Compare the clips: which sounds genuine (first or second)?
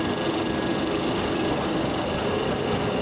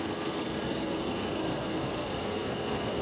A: first